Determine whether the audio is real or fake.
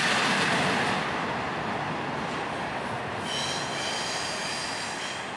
real